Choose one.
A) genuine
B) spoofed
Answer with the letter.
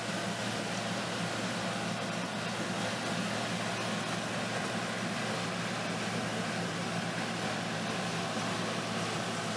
A